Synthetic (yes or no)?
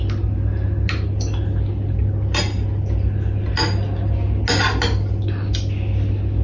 no